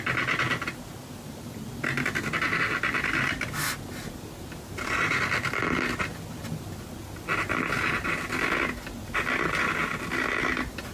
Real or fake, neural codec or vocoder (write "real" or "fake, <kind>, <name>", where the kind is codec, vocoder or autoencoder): real